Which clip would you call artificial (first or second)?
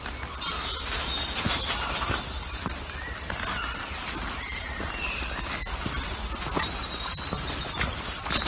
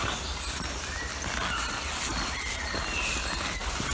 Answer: first